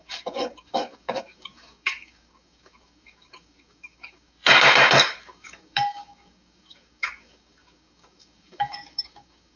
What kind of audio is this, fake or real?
fake